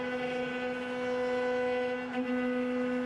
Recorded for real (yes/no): yes